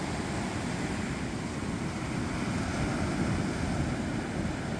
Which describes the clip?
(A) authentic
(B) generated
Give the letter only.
A